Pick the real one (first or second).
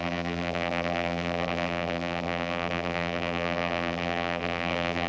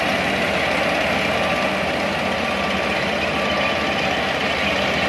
second